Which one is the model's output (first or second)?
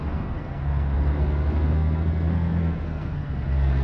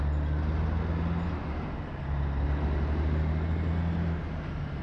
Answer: first